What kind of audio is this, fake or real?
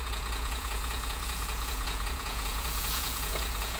fake